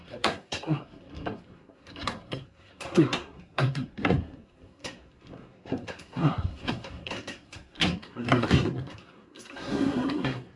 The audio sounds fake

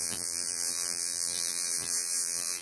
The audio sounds fake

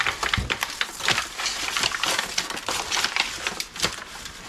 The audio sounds real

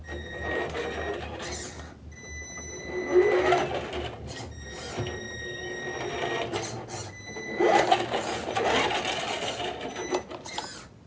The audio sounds real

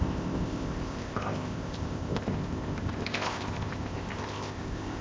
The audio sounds fake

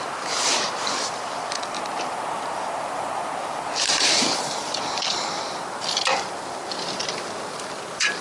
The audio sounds fake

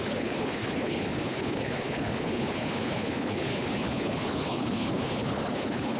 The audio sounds fake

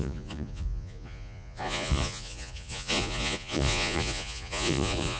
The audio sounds fake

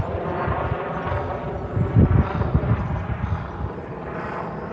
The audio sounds real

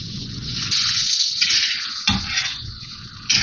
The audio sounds fake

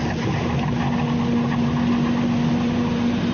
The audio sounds real